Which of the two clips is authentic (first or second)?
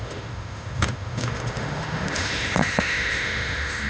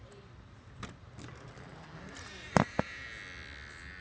second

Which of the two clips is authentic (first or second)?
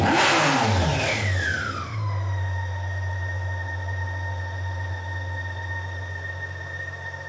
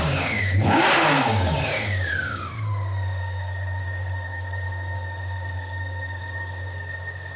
first